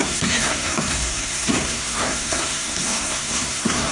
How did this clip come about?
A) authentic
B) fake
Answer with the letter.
B